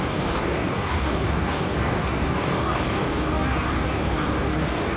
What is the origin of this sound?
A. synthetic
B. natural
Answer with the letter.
A